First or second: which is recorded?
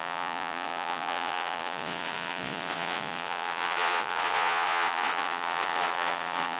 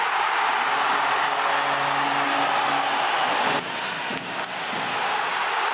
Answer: second